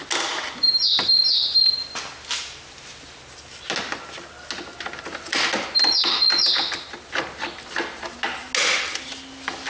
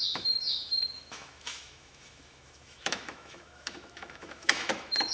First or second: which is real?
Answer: first